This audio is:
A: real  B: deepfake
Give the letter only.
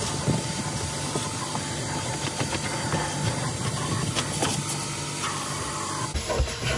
A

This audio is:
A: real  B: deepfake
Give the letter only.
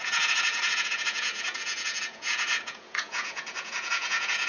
B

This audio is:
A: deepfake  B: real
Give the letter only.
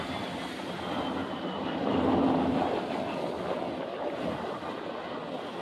B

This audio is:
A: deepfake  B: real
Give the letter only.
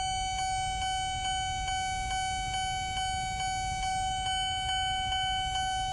B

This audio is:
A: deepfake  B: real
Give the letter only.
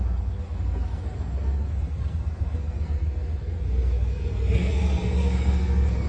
A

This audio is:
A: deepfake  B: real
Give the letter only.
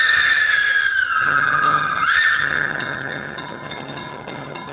A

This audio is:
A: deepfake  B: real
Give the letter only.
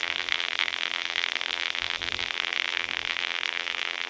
A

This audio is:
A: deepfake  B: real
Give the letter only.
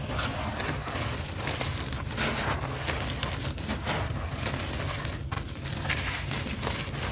B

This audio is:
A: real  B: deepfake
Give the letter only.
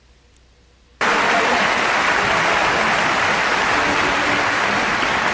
A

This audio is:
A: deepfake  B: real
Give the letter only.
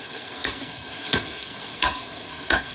A